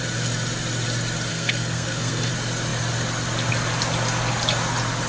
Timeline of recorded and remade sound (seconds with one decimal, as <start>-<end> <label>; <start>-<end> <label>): 0.0-1.3 recorded; 1.3-2.3 remade; 2.3-5.1 recorded